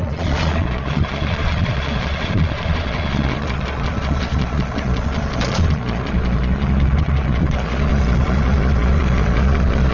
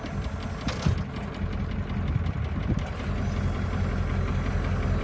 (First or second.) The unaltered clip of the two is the second